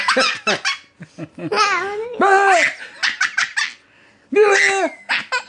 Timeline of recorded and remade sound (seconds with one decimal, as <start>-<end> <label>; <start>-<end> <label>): 0.0-5.5 recorded